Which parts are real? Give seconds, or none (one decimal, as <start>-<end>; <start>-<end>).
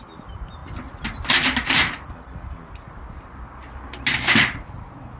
0.0-5.2